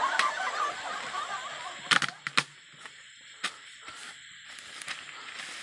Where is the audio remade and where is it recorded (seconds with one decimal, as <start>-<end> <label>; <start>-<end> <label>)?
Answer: 0.0-5.6 recorded